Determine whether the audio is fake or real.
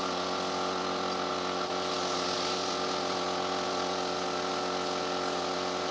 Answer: real